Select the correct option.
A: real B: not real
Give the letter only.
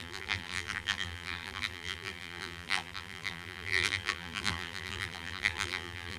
B